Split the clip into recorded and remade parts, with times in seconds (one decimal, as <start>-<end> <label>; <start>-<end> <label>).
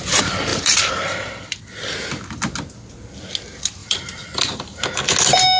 0.0-0.5 recorded; 0.5-1.6 remade; 1.6-3.8 recorded; 3.8-4.8 remade; 4.8-5.6 recorded